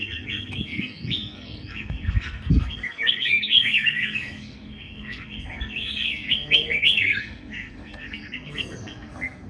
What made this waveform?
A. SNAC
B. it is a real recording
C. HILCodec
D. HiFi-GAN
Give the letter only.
A